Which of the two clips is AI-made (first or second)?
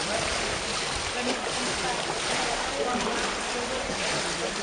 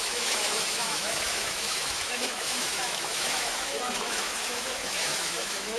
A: second